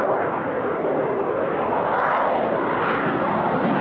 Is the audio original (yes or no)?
yes